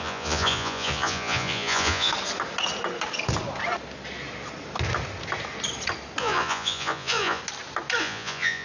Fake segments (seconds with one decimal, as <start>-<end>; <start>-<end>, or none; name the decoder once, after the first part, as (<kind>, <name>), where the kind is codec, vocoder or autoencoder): 0.0-2.1 (vocoder, Vocos); 6.2-7.4; 8.0-8.6